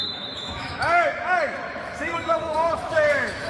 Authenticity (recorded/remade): remade